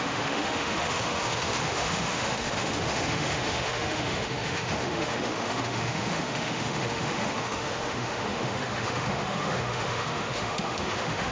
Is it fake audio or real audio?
fake